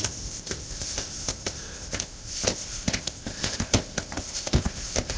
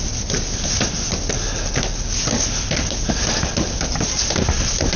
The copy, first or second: first